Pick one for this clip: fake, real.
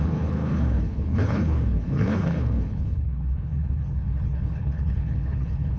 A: fake